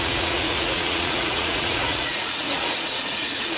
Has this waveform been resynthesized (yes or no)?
yes